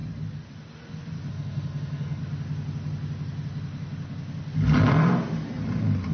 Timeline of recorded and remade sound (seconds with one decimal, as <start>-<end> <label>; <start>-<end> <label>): 0.0-1.3 recorded; 1.3-2.2 remade; 2.2-6.1 recorded